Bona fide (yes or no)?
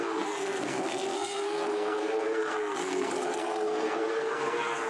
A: no